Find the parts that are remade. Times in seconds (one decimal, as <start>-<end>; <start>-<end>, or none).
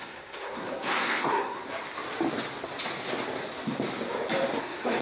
0.0-1.6; 4.6-5.0